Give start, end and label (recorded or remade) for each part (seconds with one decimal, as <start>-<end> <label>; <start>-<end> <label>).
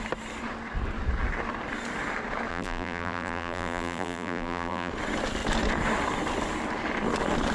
0.0-2.5 recorded; 2.5-4.9 remade; 4.9-7.5 recorded